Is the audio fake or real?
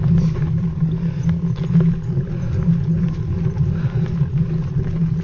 real